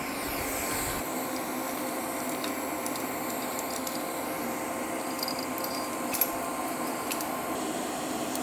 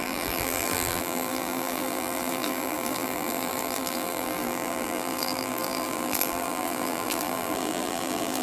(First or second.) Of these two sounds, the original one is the first